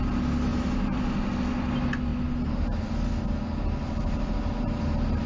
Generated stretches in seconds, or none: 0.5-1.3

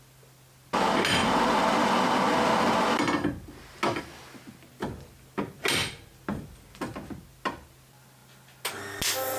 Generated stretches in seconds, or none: none

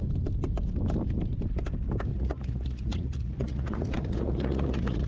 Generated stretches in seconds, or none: 2.1-5.1

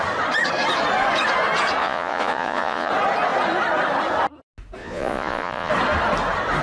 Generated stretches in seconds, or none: 1.8-2.9; 4.8-5.7

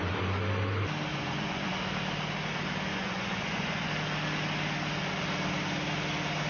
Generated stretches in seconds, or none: 1.1-1.7; 2.9-3.9